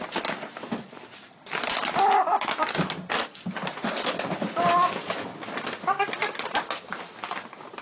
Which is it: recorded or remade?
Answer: recorded